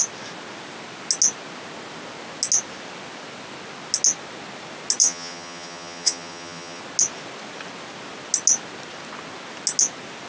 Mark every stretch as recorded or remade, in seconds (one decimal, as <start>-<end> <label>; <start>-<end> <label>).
0.0-5.0 recorded; 5.0-6.8 remade; 6.8-10.3 recorded